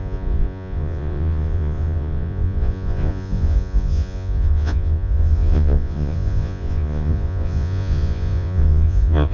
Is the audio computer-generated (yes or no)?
yes